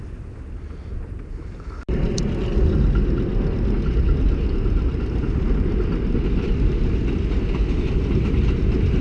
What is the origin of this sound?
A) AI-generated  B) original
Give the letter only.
B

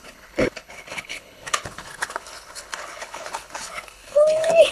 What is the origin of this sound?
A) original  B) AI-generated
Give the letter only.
B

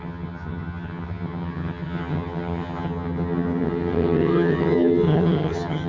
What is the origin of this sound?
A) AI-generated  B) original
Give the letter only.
A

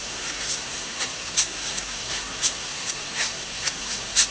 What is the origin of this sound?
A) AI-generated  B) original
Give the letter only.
A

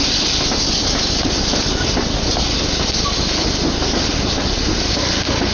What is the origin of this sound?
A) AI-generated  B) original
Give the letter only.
B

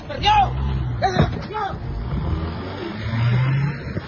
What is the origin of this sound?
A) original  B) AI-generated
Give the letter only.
A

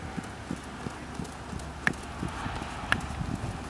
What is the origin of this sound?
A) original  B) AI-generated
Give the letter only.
A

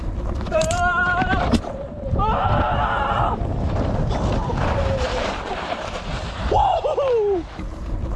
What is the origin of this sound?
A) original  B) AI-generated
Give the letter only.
B